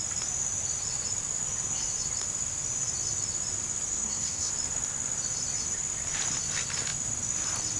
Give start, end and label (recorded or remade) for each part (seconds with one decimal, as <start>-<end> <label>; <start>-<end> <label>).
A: 0.0-3.9 recorded; 3.9-4.5 remade; 4.5-7.8 recorded